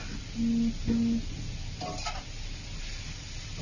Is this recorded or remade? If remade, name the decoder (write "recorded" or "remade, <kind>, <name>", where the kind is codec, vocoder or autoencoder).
recorded